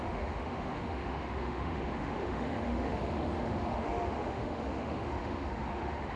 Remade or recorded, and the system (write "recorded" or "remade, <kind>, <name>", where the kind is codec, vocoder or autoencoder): remade, autoencoder, DAC-VAE